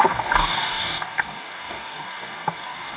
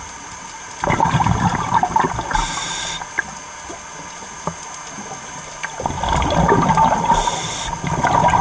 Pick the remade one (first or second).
first